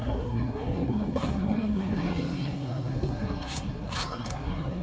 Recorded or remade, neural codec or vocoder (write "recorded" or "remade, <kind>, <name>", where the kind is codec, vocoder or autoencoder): remade, codec, SNAC